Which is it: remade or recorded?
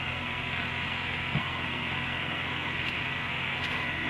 remade